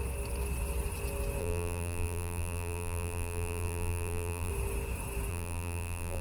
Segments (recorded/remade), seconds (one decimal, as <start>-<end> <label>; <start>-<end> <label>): 0.0-1.4 recorded; 1.4-4.5 remade; 4.5-5.3 recorded; 5.3-6.2 remade

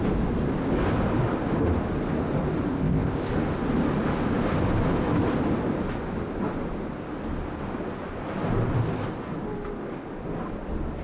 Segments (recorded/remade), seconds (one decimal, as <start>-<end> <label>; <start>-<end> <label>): 0.0-2.7 recorded; 2.7-3.3 remade; 3.3-11.0 recorded

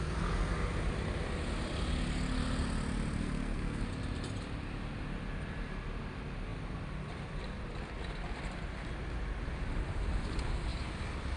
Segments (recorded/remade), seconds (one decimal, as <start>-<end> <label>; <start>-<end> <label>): 0.0-3.2 recorded; 3.2-3.9 remade; 3.9-11.4 recorded

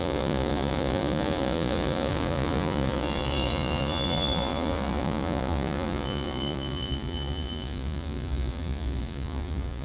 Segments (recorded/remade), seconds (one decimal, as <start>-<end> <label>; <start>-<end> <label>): 0.0-9.8 remade

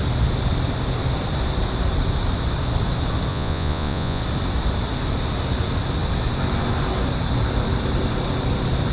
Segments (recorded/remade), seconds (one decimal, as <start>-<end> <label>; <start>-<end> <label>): 0.0-3.3 recorded; 3.3-4.2 remade; 4.2-8.9 recorded

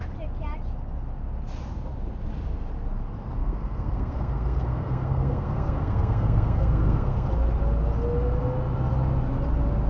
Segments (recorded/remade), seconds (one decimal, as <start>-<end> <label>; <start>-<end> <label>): 0.0-3.4 recorded; 3.4-7.3 remade; 7.3-9.9 recorded